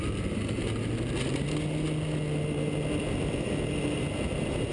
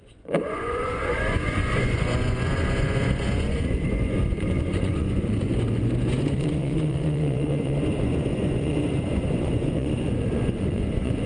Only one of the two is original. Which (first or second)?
first